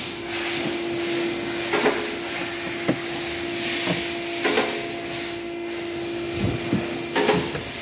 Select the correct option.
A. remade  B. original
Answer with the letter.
B